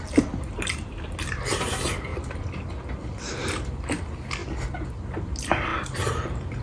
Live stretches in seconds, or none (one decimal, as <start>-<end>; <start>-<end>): 0.0-2.1; 2.7-5.7

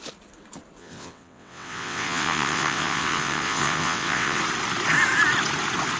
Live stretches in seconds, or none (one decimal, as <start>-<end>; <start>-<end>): 0.0-0.8; 4.4-6.0

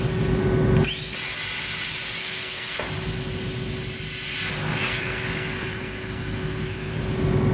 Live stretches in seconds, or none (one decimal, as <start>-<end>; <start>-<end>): 0.0-2.2; 2.8-4.7; 6.9-7.5

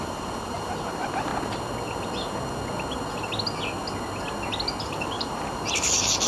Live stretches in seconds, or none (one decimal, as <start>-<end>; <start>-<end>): 1.3-4.8

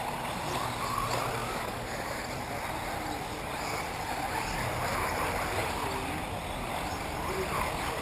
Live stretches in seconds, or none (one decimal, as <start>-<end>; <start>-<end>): 0.0-1.4; 2.2-8.0

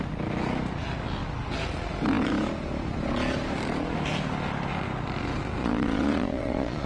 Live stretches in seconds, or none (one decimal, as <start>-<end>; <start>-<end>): 0.0-5.6